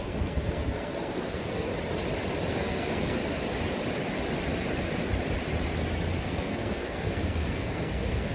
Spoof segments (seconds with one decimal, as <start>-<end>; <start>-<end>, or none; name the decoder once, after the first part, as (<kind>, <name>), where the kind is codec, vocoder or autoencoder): 0.0-1.7 (codec, SNAC); 2.5-3.2; 6.2-8.3